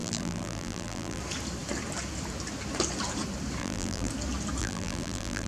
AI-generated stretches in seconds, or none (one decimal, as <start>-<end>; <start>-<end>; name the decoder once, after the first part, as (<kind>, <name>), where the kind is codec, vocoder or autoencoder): 0.0-1.2 (vocoder, BigVGAN v2); 3.6-4.1; 4.6-5.5